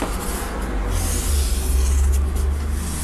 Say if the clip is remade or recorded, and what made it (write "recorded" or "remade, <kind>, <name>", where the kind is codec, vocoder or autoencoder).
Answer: recorded